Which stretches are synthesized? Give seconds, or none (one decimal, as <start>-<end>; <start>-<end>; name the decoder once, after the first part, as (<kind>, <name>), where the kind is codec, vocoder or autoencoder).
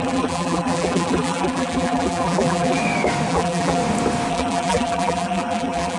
0.0-2.8 (vocoder, BigVGAN v2); 3.3-3.8; 4.3-6.0